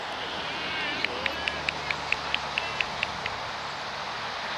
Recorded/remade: recorded